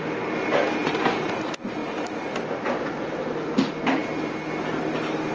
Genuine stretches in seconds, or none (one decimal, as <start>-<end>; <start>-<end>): 0.0-5.3